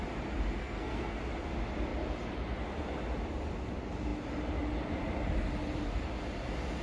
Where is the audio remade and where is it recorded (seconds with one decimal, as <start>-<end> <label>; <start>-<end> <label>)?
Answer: 0.0-0.6 recorded; 0.6-1.2 remade; 1.2-6.8 recorded